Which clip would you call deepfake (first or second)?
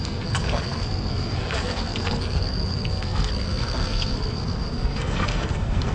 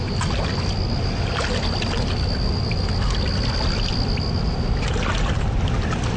first